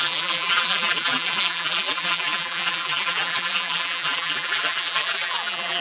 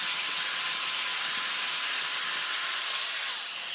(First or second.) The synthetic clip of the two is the first